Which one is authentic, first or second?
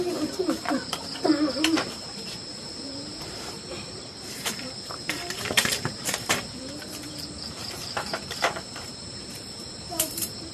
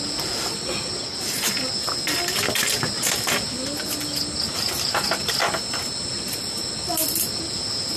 second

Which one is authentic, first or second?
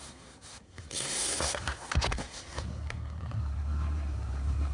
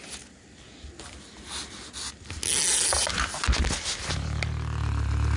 second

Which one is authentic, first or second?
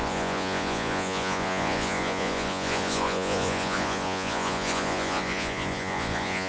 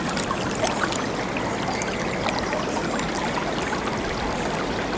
second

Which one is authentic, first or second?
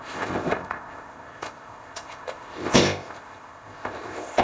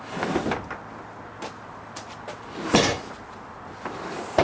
second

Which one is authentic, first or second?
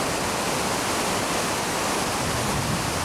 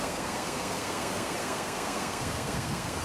first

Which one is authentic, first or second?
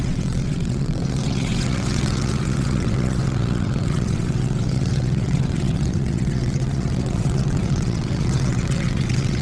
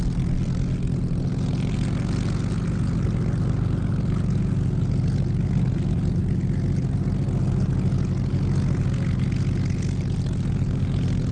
second